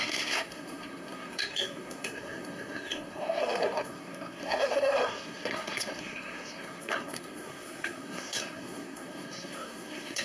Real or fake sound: fake